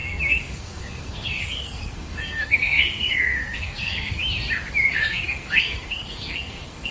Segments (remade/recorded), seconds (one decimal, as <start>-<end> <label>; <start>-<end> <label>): 0.0-4.2 remade; 4.2-4.9 recorded; 4.9-6.9 remade